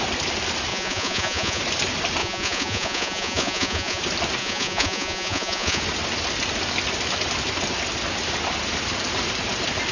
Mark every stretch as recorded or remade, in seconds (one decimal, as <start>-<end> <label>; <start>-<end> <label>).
0.0-0.7 recorded; 0.7-1.6 remade; 1.6-2.2 recorded; 2.2-4.0 remade; 4.0-4.4 recorded; 4.4-5.8 remade; 5.8-9.9 recorded